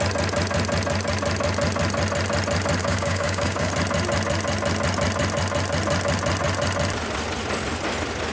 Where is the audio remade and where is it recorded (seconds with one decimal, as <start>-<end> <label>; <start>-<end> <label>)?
0.0-2.8 recorded; 2.8-3.7 remade; 3.7-8.3 recorded